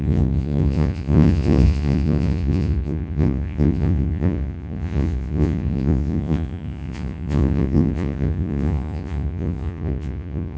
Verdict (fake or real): fake